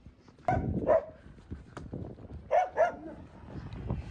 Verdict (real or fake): real